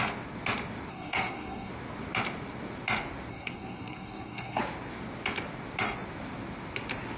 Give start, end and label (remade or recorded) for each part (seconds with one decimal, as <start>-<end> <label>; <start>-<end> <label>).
0.0-0.9 recorded; 0.9-1.7 remade; 1.7-3.3 recorded; 3.3-4.6 remade; 4.6-7.2 recorded